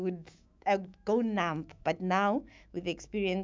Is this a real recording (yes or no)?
no